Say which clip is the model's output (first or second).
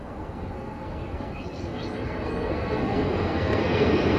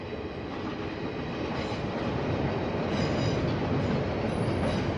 first